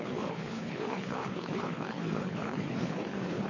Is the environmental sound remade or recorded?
remade